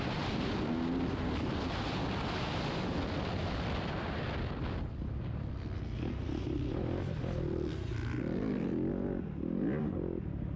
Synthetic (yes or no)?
no